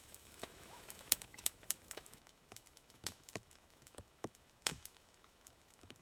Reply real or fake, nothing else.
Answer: fake